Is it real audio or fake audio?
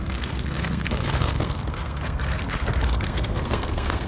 fake